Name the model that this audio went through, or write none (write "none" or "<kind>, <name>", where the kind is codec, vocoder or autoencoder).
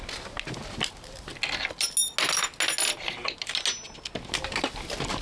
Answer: none